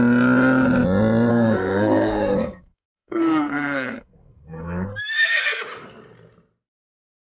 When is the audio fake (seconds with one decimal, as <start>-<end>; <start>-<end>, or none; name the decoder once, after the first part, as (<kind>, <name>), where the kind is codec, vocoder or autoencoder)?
1.3-5.6 (codec, SNAC)

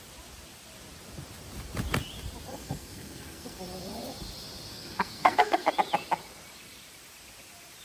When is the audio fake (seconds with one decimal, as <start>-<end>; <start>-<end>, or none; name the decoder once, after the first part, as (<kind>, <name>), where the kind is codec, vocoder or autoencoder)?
2.5-3.6 (codec, SNAC); 4.7-5.7

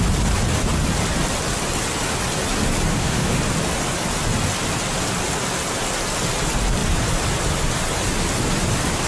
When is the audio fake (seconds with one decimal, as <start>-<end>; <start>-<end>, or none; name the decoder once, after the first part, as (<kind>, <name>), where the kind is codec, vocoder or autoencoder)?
2.9-3.4 (autoencoder, DAC-VAE)

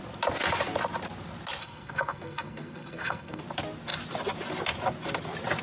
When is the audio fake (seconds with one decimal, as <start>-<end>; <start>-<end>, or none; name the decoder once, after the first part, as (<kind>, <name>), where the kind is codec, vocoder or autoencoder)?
1.6-3.4 (codec, SNAC)

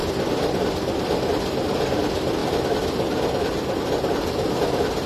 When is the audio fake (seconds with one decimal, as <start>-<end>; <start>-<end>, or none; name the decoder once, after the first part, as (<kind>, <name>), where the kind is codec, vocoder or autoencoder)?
none

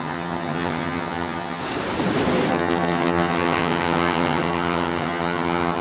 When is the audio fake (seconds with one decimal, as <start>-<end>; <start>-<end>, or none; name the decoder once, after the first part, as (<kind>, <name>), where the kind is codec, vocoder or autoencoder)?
0.0-1.6 (vocoder, HiFi-GAN); 2.5-5.8

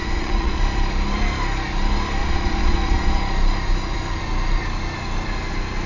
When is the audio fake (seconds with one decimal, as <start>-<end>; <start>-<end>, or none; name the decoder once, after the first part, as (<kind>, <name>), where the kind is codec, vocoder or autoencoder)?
0.0-0.6 (vocoder, Vocos); 2.2-3.2